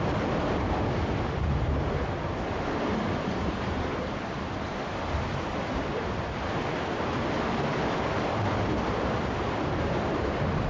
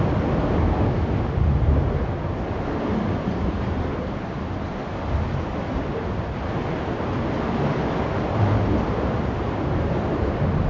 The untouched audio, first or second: second